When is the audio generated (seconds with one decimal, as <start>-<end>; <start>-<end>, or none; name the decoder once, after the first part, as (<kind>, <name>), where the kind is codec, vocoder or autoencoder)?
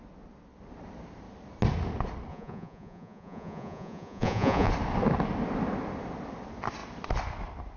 2.3-4.7 (vocoder, Vocos)